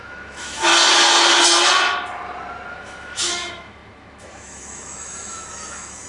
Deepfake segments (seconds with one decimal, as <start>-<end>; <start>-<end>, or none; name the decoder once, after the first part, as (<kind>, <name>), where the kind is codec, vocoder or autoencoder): 0.0-0.7 (autoencoder, DAC-VAE); 2.7-6.1

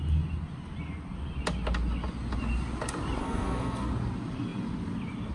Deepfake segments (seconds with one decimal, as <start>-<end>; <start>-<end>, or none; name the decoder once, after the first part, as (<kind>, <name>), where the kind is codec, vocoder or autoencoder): 3.2-3.9 (codec, SNAC)